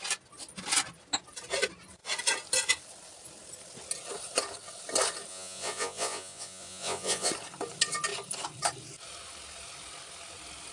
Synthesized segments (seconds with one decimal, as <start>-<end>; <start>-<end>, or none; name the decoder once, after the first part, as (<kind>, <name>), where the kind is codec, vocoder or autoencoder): 5.3-7.3 (vocoder, Vocos)